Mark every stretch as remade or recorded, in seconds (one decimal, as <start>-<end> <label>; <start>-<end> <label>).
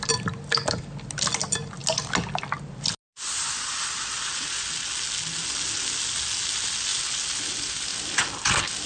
0.0-8.9 recorded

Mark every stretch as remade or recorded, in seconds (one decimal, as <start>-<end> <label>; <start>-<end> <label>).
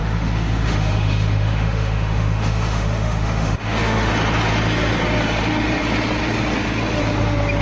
0.0-4.1 remade; 4.1-7.6 recorded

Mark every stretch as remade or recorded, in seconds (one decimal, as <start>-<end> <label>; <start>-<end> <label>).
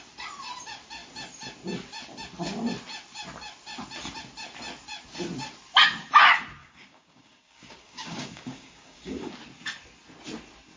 0.0-6.6 recorded; 6.6-9.3 remade; 9.3-10.8 recorded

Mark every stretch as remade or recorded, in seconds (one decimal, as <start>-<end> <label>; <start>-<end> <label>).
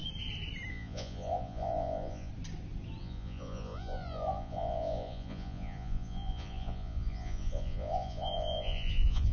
0.0-0.7 recorded; 0.7-2.3 remade; 2.3-3.0 recorded; 3.0-9.3 remade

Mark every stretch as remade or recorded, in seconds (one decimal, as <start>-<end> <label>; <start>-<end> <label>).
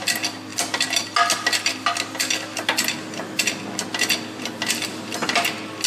0.0-5.9 recorded